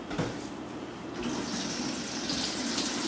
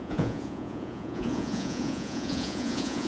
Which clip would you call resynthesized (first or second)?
second